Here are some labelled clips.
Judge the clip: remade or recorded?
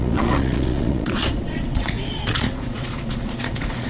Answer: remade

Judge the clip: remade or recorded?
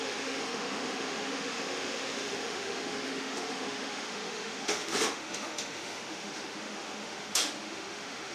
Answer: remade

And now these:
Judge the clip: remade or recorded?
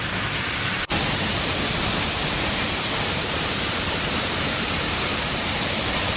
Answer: remade